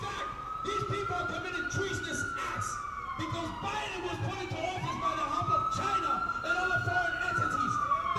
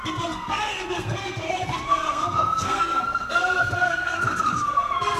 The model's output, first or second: second